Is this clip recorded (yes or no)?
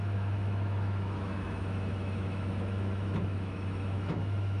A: no